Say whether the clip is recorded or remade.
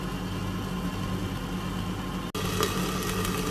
recorded